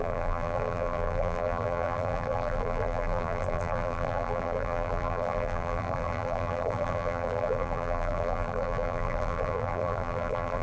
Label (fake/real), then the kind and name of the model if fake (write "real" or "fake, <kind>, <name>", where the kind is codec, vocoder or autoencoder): fake, vocoder, BigVGAN v2